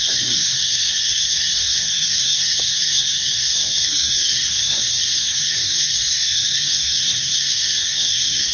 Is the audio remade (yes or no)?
yes